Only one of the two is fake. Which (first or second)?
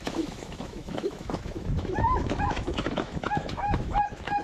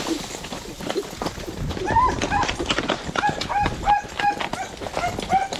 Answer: first